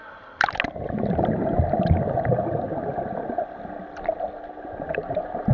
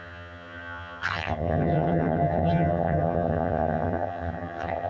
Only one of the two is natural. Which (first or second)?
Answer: first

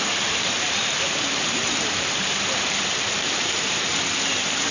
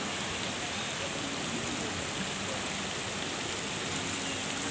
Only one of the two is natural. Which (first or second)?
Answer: second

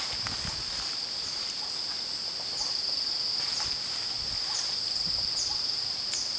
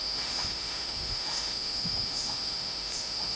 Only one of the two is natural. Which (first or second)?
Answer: first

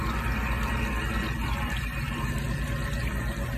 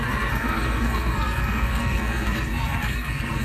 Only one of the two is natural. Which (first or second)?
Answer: first